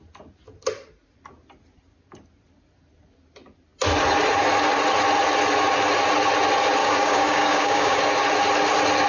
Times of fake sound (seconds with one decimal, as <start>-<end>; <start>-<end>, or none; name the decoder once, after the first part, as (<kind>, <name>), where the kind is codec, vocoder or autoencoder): 6.8-8.0 (codec, DAC)